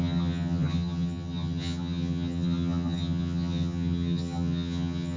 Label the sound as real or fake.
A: fake